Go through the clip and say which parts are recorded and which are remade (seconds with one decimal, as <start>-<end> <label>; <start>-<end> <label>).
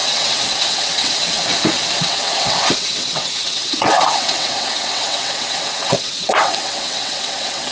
0.0-1.4 remade; 1.4-2.0 recorded; 2.0-7.7 remade